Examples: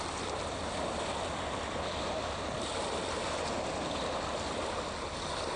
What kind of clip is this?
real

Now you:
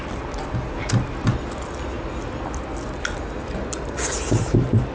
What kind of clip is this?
real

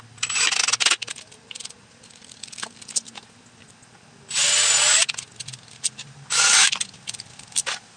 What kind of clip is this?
real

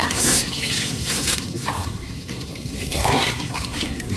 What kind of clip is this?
fake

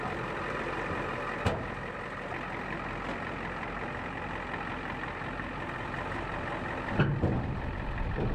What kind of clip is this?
real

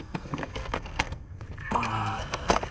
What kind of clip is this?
fake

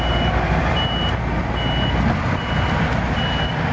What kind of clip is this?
real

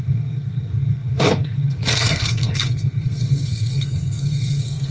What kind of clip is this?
fake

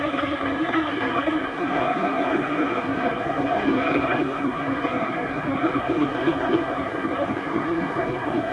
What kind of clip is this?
fake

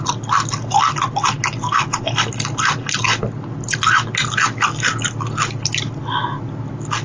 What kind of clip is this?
real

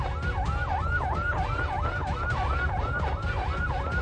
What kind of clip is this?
real